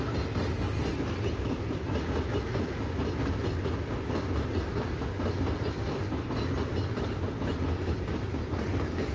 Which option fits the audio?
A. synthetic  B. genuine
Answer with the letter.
B